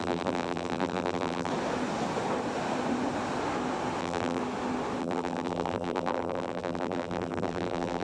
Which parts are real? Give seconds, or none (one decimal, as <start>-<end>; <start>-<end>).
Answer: 1.5-4.0; 4.4-5.0